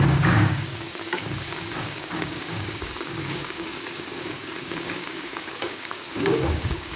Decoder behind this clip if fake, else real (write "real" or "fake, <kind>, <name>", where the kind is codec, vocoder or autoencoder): fake, codec, DAC